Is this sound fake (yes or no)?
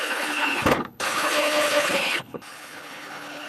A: yes